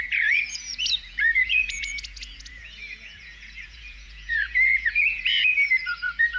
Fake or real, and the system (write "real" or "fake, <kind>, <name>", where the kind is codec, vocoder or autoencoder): fake, vocoder, Vocos